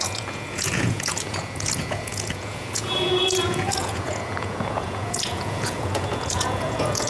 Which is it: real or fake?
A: fake